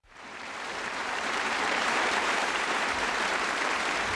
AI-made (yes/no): yes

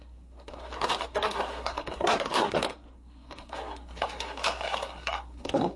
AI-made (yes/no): yes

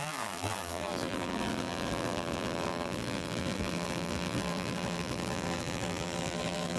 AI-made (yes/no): yes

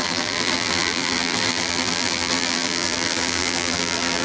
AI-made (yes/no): yes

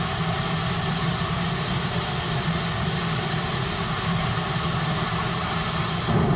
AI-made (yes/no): no